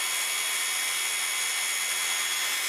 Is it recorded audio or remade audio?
recorded